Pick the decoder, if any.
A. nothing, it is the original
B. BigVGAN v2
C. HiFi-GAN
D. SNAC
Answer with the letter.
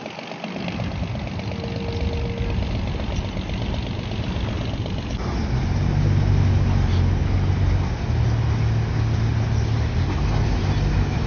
A